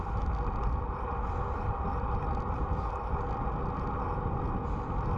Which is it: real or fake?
real